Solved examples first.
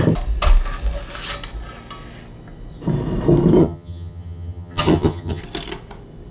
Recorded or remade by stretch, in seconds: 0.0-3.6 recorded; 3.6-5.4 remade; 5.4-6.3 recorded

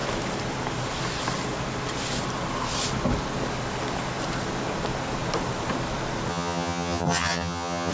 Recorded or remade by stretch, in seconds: 0.0-6.3 recorded; 6.3-7.9 remade

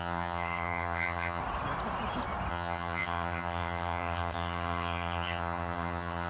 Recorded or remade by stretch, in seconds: 0.0-1.4 remade; 1.4-2.5 recorded; 2.5-6.3 remade

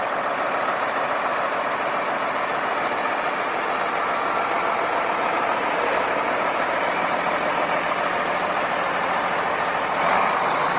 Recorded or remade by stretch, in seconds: 0.0-10.8 recorded

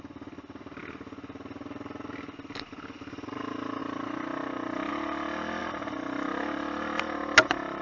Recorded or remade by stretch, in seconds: 0.0-7.8 recorded

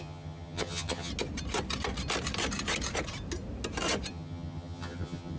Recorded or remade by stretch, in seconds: 0.0-1.1 remade; 1.1-4.1 recorded; 4.1-5.4 remade

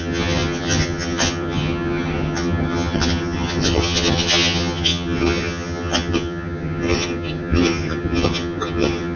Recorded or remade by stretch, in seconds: 0.0-9.2 remade

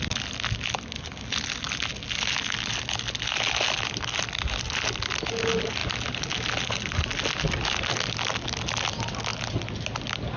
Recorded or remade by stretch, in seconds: 0.0-10.4 recorded